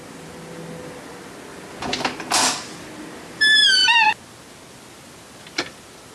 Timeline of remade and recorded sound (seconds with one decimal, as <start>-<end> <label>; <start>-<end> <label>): 0.0-6.1 recorded